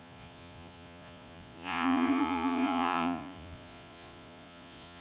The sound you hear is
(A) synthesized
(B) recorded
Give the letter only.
A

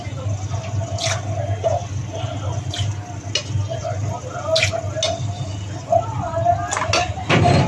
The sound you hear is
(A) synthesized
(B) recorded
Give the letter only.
B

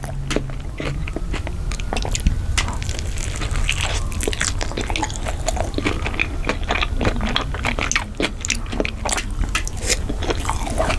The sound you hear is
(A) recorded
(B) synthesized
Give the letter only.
A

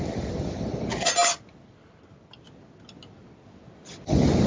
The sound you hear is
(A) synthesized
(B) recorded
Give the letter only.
B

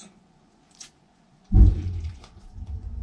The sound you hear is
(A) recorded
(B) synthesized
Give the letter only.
B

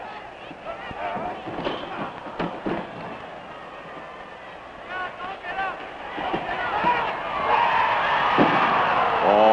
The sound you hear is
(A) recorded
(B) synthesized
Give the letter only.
A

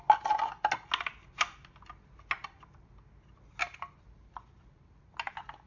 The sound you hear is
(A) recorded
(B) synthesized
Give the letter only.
A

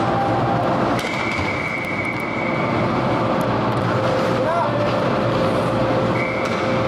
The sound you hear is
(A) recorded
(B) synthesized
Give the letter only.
A